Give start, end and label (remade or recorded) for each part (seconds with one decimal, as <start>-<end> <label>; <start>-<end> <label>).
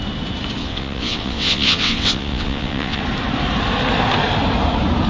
0.0-0.6 recorded; 0.6-3.0 remade; 3.0-5.1 recorded